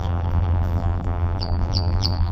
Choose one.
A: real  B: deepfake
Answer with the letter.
B